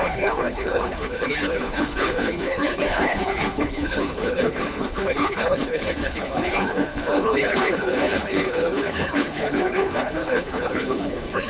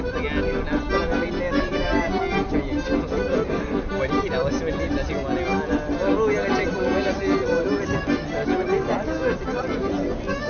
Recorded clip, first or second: second